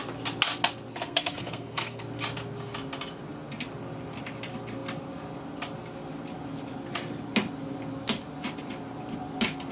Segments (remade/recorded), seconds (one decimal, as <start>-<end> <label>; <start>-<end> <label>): 0.0-0.9 recorded; 0.9-2.0 remade; 2.0-9.7 recorded